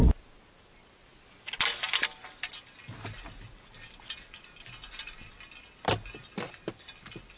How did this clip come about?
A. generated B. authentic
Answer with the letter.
B